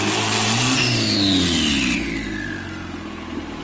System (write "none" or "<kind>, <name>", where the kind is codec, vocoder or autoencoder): none